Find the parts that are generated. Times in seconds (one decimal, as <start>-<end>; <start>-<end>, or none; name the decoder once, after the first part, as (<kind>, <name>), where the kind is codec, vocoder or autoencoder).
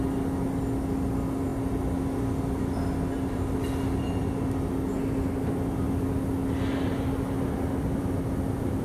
none